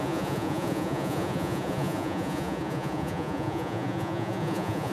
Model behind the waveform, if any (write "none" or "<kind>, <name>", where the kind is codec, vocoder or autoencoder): vocoder, Vocos